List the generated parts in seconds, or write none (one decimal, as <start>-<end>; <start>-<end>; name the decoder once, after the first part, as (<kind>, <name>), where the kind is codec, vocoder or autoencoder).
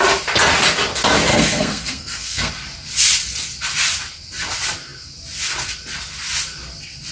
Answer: 1.3-2.5 (codec, SNAC)